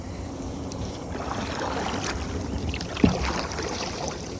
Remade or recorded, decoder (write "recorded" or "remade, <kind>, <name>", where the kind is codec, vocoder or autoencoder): remade, vocoder, BigVGAN v2